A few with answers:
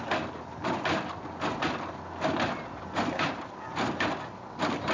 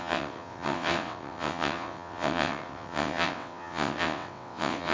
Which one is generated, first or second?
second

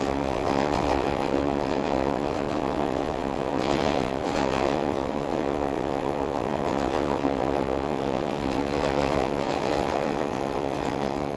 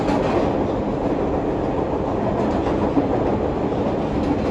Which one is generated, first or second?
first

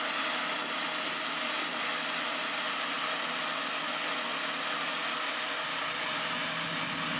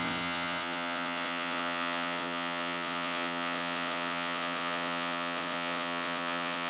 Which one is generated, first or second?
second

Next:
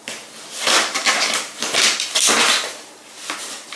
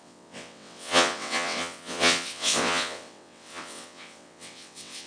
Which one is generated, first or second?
second